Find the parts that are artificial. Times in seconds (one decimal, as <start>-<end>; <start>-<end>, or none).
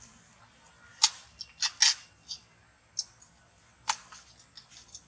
none